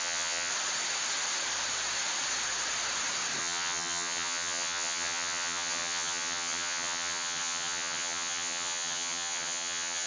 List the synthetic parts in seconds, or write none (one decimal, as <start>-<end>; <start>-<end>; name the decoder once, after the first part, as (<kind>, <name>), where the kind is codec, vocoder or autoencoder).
0.0-0.5 (vocoder, HiFi-GAN); 3.4-10.1